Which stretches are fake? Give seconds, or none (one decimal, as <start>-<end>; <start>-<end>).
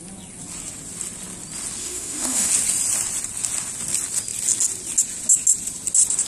1.8-2.5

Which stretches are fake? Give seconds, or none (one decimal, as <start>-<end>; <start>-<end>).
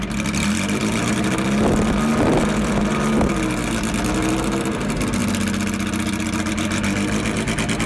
none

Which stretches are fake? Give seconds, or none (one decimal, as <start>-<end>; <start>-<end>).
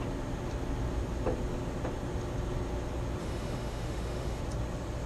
3.2-4.4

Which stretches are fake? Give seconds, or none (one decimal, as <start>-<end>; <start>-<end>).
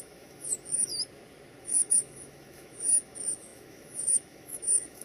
0.0-0.9; 1.6-5.0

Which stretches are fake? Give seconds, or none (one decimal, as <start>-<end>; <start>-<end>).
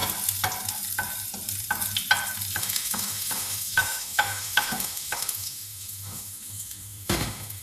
2.6-7.6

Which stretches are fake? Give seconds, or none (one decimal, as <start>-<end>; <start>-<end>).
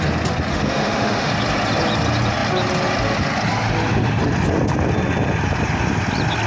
0.5-1.3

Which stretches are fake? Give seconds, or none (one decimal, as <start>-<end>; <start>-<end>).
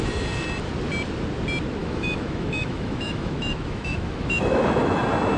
1.8-5.0